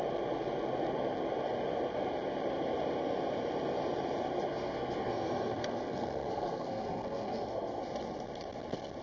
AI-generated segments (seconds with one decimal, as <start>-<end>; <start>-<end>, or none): 4.5-7.8